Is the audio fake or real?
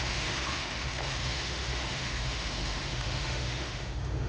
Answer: fake